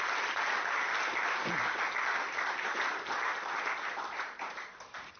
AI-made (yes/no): no